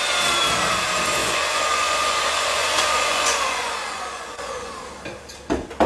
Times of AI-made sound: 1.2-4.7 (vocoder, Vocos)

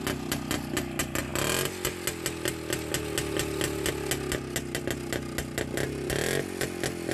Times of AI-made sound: none

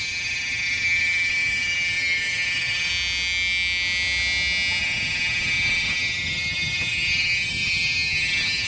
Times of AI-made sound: 0.0-2.9 (vocoder, HiFi-GAN); 4.8-8.7

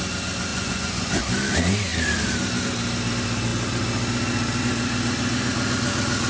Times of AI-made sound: 0.5-1.2 (vocoder, Vocos)

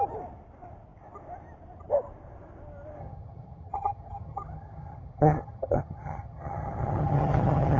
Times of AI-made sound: 3.0-7.8 (vocoder, HiFi-GAN)

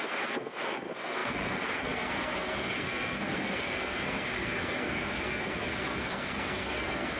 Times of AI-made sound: 0.0-7.2 (codec, SNAC)

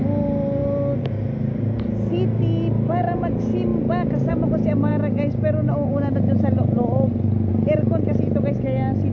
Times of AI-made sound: none

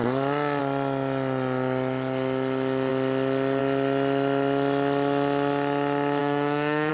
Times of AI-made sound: 6.2-6.9 (autoencoder, DAC-VAE)